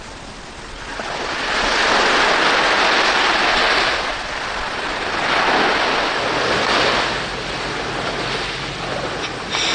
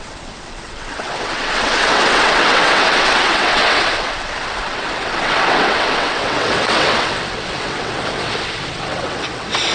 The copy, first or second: second